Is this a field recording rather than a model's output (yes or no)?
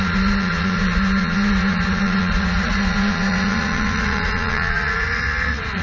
no